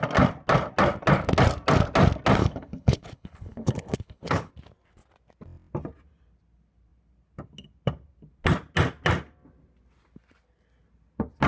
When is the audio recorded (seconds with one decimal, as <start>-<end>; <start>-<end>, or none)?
0.0-2.4; 4.5-11.5